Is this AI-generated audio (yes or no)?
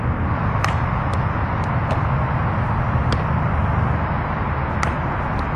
no